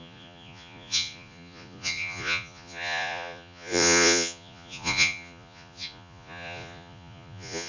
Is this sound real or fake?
fake